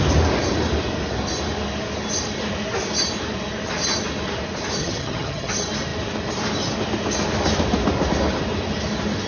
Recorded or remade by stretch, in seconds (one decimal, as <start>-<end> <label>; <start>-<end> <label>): 0.0-4.8 recorded; 4.8-5.5 remade; 5.5-9.3 recorded